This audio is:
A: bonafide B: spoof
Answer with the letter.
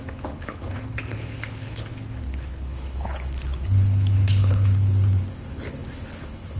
B